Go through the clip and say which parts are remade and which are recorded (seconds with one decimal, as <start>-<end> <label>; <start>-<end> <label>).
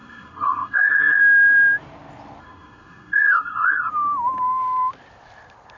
0.0-1.2 remade; 1.2-2.4 recorded; 2.4-3.9 remade; 3.9-5.8 recorded